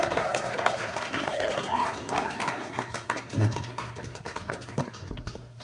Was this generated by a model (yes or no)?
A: yes